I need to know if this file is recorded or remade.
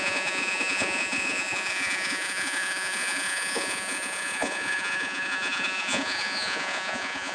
remade